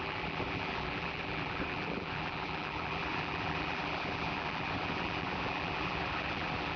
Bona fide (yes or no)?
no